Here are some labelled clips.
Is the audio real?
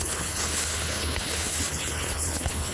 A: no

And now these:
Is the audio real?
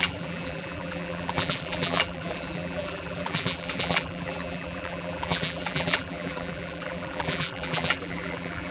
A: no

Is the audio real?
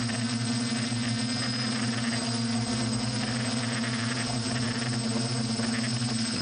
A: yes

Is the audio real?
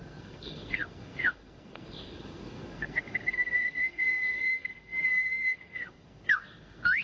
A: no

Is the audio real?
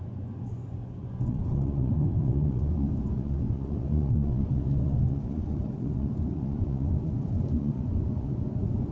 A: no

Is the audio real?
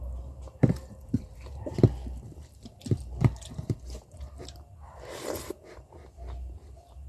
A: yes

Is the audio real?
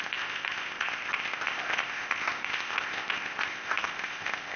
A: no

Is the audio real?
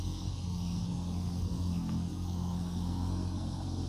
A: no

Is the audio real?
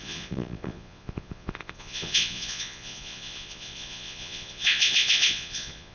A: no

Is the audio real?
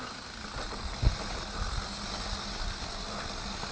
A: yes